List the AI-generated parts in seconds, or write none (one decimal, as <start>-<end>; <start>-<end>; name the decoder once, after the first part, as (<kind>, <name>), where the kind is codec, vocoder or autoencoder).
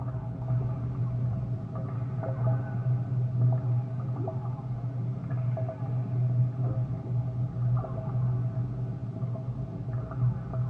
none